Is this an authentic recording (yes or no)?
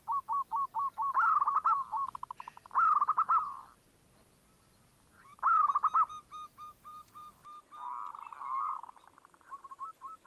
yes